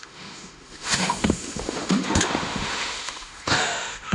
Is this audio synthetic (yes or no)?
yes